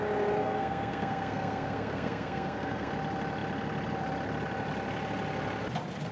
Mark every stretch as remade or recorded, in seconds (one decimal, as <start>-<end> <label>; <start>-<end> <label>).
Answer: 0.0-0.4 recorded; 0.4-2.9 remade; 2.9-6.1 recorded